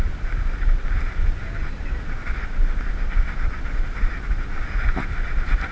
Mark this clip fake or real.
real